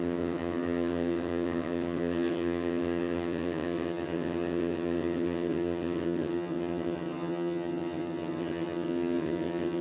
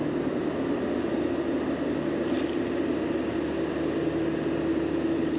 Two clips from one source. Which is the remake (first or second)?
first